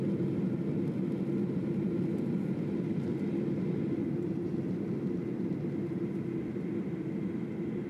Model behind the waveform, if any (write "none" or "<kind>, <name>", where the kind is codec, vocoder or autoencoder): none